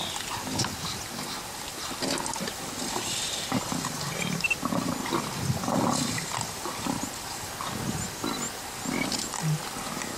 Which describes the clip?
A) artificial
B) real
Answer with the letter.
B